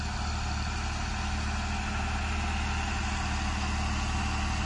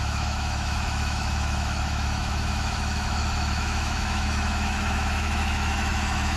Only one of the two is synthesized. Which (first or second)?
second